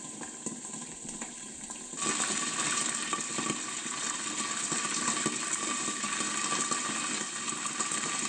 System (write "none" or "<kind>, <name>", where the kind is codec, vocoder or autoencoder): none